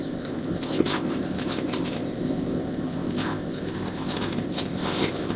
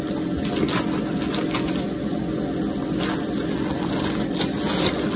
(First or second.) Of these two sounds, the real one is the second